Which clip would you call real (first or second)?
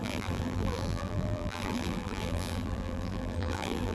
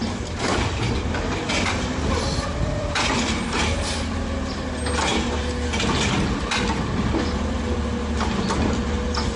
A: second